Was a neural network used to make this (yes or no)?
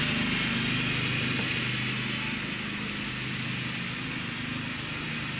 no